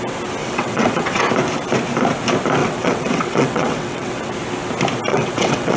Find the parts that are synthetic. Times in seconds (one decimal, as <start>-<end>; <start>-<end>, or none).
0.4-1.2; 2.6-4.3; 5.1-5.8